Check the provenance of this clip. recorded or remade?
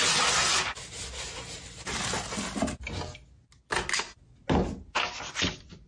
recorded